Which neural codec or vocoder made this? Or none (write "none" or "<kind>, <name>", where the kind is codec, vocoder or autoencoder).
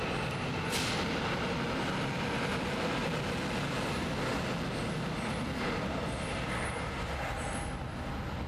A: none